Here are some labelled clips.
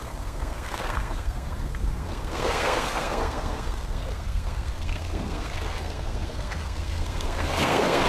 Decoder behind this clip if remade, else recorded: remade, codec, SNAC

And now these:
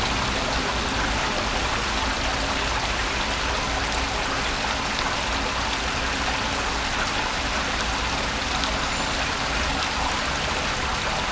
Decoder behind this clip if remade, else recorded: recorded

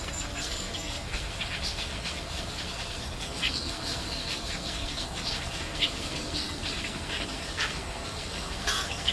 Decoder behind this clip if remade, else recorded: remade, codec, SNAC